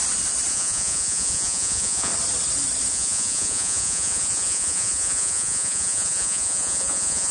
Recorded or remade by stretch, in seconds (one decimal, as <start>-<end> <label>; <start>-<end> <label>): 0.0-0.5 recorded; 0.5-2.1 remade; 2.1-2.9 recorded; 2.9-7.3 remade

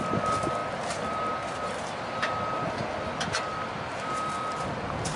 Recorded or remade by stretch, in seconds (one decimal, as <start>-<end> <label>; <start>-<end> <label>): 0.0-5.2 recorded

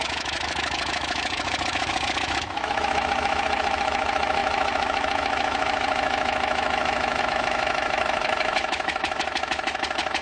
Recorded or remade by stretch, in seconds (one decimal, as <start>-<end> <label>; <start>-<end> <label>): 0.0-10.2 remade

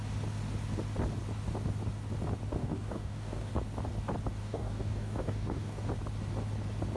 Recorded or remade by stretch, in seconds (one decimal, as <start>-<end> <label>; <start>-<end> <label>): 0.0-2.6 recorded; 2.6-3.5 remade; 3.5-4.4 recorded; 4.4-5.9 remade; 5.9-7.0 recorded